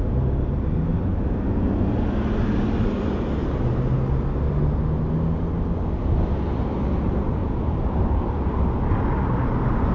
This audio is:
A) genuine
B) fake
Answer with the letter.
A